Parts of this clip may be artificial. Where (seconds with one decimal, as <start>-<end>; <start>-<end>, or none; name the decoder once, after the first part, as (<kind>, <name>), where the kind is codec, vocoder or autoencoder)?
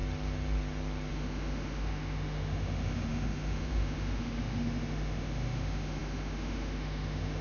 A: 1.1-7.4 (autoencoder, DAC-VAE)